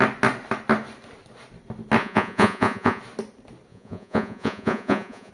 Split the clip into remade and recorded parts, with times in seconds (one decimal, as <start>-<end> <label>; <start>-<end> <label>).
0.0-2.0 recorded; 2.0-3.0 remade; 3.0-3.7 recorded; 3.7-5.3 remade